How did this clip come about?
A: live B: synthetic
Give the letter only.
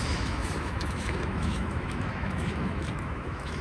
B